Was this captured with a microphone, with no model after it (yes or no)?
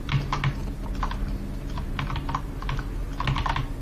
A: yes